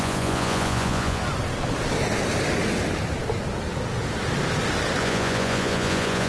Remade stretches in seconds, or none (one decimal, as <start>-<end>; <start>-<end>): 0.0-1.2; 5.0-6.3